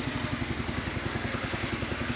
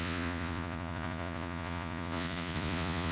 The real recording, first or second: first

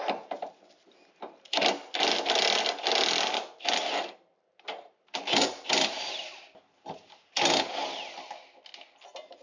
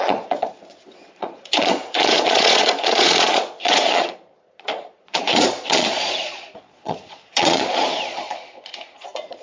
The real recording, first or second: first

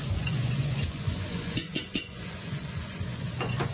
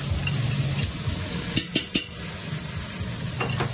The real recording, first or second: second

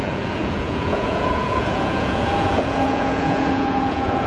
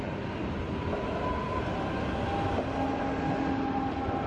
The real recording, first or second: second